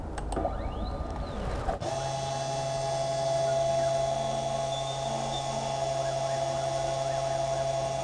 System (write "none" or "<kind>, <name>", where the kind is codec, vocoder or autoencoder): none